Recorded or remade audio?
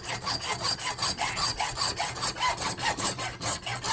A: recorded